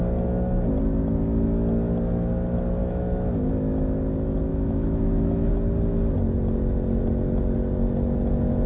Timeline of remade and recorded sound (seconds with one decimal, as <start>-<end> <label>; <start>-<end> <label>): 0.0-2.8 recorded; 2.8-3.5 remade; 3.5-4.5 recorded; 4.5-5.5 remade; 5.5-8.7 recorded